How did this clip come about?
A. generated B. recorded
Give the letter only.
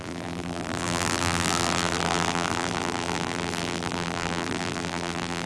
A